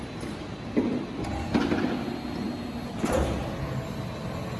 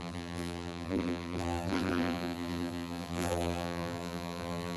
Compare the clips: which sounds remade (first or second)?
second